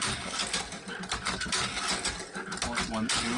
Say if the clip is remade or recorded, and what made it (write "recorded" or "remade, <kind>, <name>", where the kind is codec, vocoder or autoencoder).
recorded